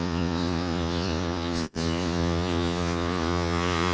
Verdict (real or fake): fake